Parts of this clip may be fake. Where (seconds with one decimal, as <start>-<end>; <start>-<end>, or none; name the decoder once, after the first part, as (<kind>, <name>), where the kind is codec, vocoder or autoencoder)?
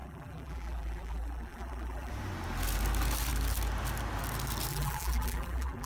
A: 0.0-2.1 (vocoder, BigVGAN v2); 4.7-5.9